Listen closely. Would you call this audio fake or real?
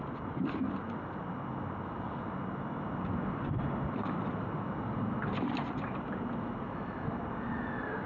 fake